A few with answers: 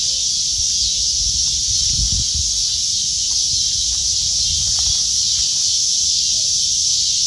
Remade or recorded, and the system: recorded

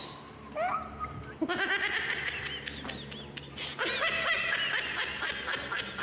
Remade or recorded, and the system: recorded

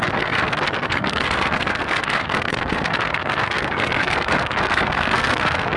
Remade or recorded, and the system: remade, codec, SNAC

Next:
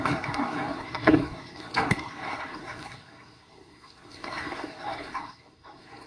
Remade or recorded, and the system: remade, codec, SNAC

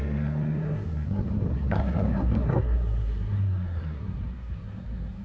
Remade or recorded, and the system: remade, codec, SNAC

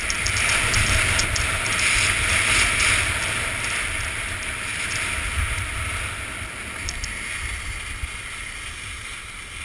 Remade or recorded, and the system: recorded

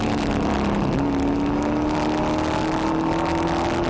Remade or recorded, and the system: recorded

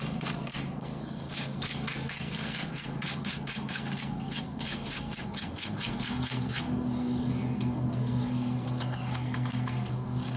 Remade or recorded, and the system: remade, codec, SNAC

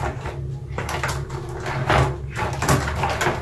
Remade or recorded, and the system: recorded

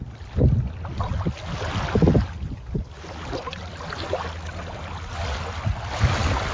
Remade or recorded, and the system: recorded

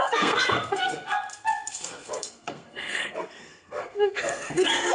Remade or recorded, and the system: remade, codec, SNAC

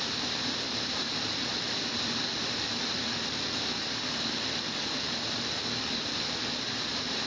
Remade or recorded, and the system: recorded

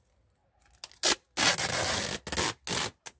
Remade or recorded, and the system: recorded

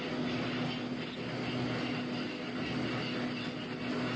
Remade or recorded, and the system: recorded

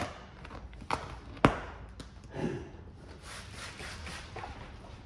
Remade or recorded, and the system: recorded